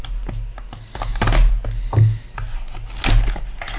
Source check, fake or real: real